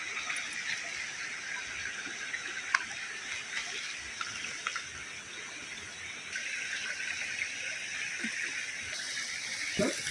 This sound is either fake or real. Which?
real